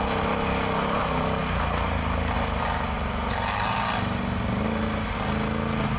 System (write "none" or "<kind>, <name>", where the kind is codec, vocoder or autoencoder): none